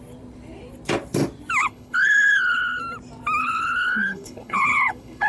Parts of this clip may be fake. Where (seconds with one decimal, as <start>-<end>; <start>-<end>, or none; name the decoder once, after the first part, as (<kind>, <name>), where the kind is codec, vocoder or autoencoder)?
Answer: 1.6-2.8 (codec, HILCodec); 3.4-5.3